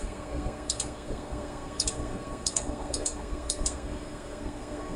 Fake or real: fake